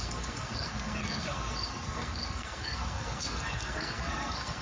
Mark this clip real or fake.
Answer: fake